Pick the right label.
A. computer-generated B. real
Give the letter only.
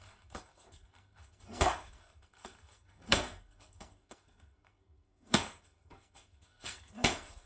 A